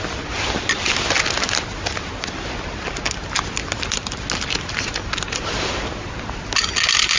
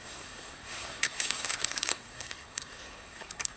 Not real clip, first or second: second